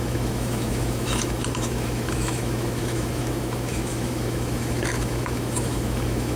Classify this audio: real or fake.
fake